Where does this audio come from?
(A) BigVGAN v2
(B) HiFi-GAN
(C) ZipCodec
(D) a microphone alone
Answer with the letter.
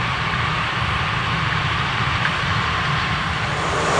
A